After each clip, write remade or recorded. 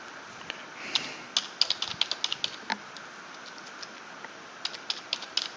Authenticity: recorded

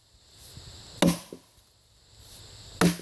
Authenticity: recorded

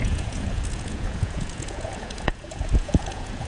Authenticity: remade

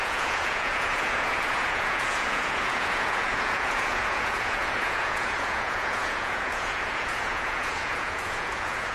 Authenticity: remade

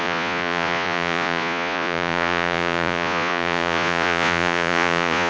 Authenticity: remade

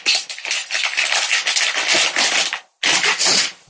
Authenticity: recorded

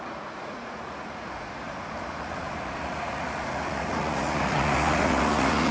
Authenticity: remade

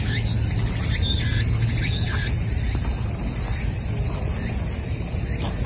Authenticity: recorded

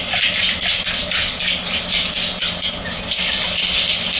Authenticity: recorded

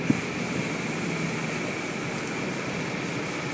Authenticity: recorded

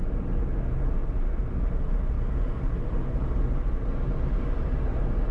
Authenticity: recorded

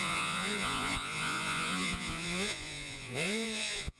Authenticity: remade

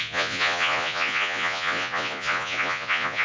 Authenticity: remade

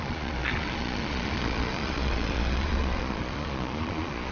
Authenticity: remade